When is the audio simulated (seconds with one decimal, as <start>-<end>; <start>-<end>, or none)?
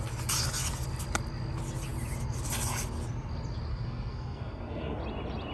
3.7-5.0